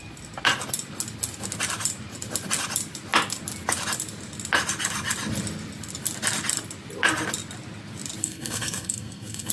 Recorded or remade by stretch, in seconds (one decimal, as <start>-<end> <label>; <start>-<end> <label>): 0.0-8.2 recorded; 8.2-9.5 remade